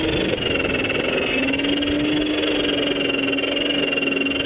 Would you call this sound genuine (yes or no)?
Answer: yes